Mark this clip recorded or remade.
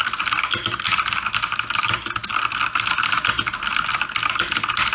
recorded